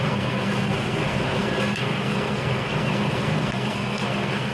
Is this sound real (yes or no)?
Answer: no